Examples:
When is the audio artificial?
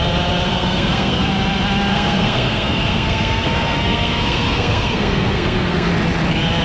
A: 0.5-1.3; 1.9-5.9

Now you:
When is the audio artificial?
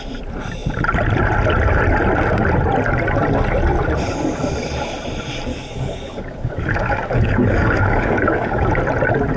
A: 5.5-8.7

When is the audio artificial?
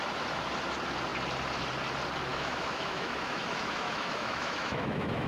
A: 2.3-5.3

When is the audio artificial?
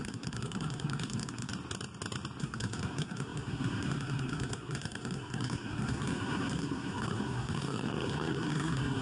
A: 0.0-1.5; 2.4-9.0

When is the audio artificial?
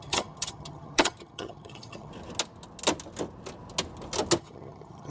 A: 0.0-2.1; 4.4-5.1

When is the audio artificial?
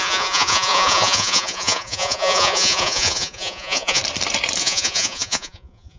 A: 0.0-4.0; 4.6-6.0